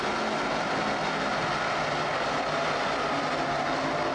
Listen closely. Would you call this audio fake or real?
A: real